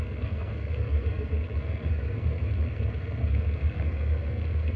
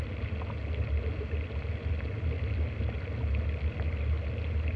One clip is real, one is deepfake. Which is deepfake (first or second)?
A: first